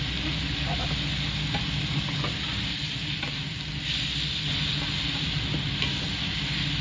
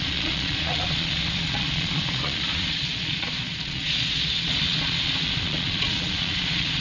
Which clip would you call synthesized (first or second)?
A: second